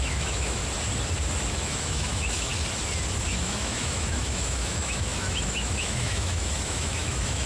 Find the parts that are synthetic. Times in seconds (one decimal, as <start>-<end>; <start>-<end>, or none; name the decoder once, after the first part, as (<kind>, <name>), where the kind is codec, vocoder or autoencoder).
0.0-0.6 (autoencoder, DAC-VAE); 1.5-2.5; 3.4-7.5